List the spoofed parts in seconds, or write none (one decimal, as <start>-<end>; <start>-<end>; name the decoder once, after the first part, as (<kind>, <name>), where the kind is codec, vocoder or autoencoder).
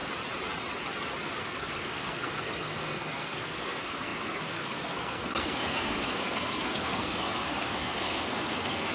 1.4-8.9 (codec, SNAC)